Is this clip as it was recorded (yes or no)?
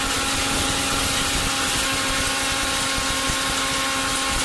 yes